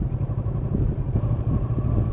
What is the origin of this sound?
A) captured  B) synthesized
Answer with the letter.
A